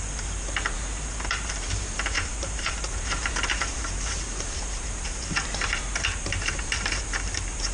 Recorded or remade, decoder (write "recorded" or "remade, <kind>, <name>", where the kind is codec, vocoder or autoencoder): remade, vocoder, BigVGAN v2